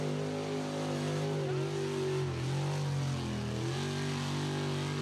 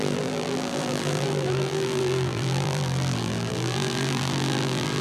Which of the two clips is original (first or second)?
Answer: first